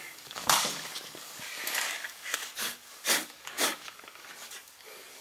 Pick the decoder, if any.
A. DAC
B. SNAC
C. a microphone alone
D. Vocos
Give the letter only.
A